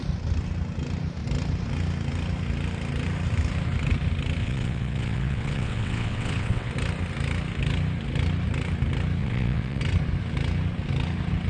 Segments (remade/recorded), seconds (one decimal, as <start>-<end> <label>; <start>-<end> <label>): 0.0-4.4 recorded; 4.4-6.7 remade; 6.7-9.2 recorded; 9.2-9.8 remade; 9.8-11.5 recorded